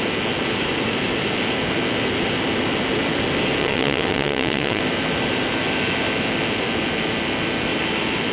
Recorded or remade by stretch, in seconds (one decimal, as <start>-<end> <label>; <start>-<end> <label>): 0.0-3.6 recorded; 3.6-4.8 remade; 4.8-8.3 recorded

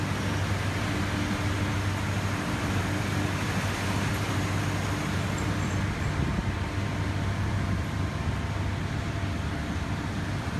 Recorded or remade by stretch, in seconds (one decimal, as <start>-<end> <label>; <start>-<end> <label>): 0.0-10.6 recorded